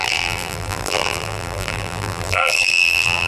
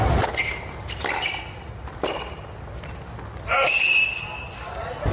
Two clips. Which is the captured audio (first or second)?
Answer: second